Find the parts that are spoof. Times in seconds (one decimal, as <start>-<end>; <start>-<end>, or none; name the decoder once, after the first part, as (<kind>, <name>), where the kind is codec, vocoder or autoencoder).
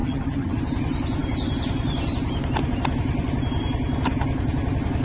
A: 0.0-0.5 (vocoder, HiFi-GAN)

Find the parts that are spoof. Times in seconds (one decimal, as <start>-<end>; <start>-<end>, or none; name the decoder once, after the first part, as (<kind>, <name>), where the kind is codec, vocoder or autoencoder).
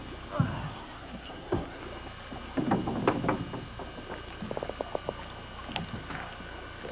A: 0.6-1.8 (codec, SNAC)